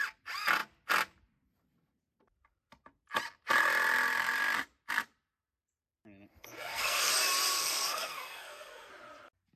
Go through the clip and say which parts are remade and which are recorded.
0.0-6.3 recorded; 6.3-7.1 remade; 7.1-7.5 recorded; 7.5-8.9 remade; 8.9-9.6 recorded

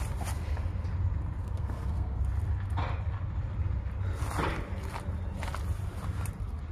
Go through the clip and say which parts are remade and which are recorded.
0.0-1.4 recorded; 1.4-2.2 remade; 2.2-6.7 recorded

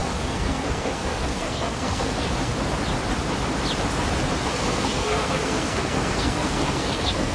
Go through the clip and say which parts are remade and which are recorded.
0.0-2.5 remade; 2.5-4.5 recorded; 4.5-7.3 remade

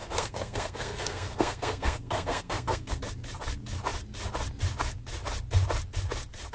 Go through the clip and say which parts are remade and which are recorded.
0.0-3.0 remade; 3.0-6.5 recorded

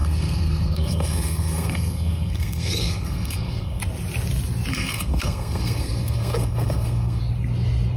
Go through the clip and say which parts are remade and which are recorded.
0.0-3.8 remade; 3.8-4.7 recorded; 4.7-7.2 remade; 7.2-8.0 recorded